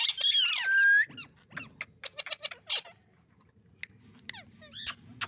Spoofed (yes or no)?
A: no